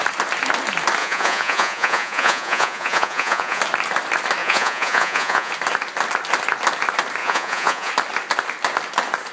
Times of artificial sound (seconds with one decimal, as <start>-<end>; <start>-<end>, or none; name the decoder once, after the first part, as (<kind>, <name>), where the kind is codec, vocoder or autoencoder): 1.0-3.6 (vocoder, Vocos); 4.4-5.5; 7.2-7.9